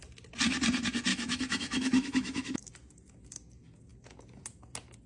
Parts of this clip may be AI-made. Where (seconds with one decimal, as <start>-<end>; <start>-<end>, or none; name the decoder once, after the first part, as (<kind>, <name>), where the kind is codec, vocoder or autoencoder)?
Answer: 1.1-2.7 (autoencoder, DAC-VAE)